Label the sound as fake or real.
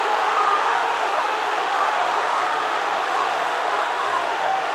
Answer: fake